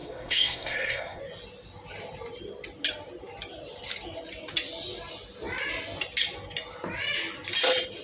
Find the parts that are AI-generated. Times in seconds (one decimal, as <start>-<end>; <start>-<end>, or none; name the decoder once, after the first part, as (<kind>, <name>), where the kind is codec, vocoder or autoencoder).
0.0-1.2 (codec, SNAC)